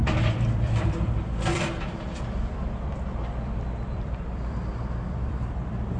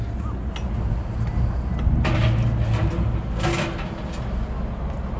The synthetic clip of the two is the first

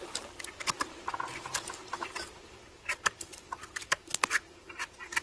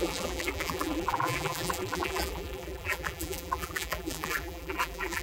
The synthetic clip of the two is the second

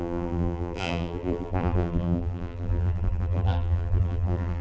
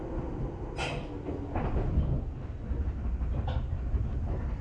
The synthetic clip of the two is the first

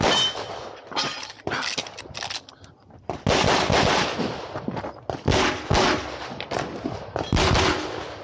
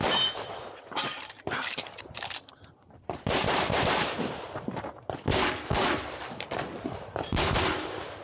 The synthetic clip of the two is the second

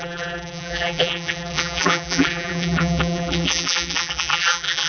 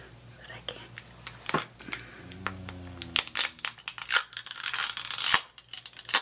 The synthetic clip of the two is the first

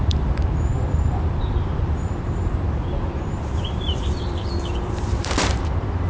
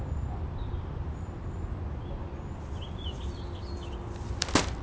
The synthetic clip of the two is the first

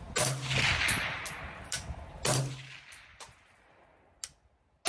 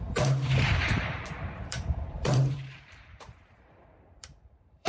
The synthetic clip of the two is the second